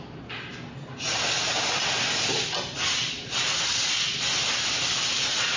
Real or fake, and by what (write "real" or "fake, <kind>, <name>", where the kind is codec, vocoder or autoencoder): real